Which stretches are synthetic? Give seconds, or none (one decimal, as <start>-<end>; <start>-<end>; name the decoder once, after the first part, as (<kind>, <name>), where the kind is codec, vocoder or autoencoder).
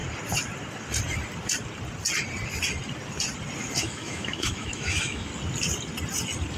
3.8-5.3 (autoencoder, DAC-VAE)